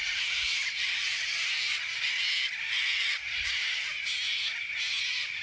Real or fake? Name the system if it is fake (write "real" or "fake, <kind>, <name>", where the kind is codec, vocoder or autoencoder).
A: real